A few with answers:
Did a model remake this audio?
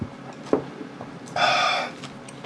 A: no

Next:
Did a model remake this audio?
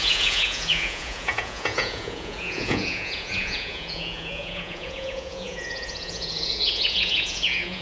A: yes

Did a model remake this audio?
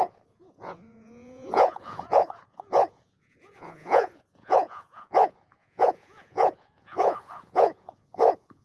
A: yes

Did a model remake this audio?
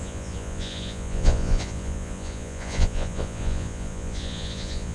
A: yes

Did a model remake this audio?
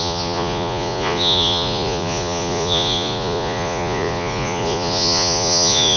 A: yes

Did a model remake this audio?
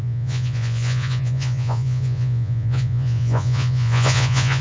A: yes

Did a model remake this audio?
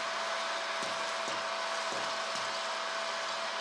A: no